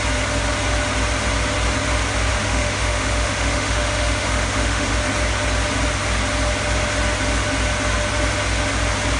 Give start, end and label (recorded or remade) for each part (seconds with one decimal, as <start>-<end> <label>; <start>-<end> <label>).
0.0-2.3 recorded; 2.3-4.9 remade; 4.9-9.2 recorded